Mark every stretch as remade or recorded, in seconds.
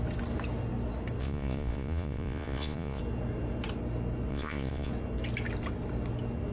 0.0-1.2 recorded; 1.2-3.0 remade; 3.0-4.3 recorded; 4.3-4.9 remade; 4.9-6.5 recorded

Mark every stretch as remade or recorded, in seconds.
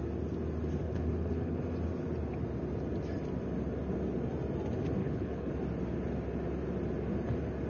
0.0-0.8 recorded; 0.8-1.6 remade; 1.6-5.0 recorded; 5.0-5.5 remade; 5.5-7.7 recorded